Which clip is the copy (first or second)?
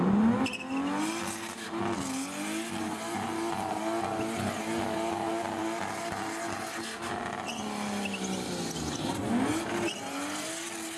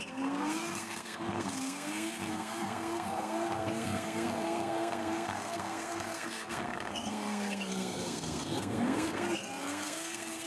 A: second